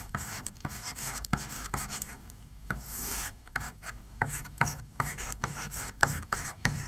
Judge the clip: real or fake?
fake